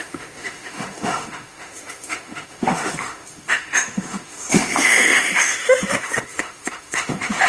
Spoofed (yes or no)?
yes